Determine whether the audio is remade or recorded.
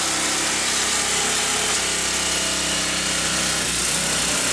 recorded